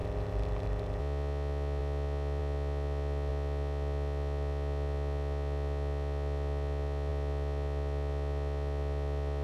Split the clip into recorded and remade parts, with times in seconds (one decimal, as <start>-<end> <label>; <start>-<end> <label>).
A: 0.0-1.0 remade; 1.0-9.4 recorded